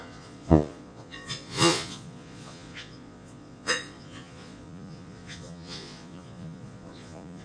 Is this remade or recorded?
remade